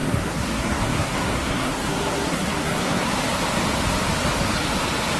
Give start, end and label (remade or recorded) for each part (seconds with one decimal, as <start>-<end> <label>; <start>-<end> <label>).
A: 0.0-3.1 remade; 3.1-5.2 recorded